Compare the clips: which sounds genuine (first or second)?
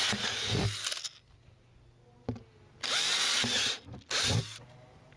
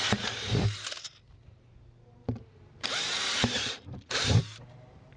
first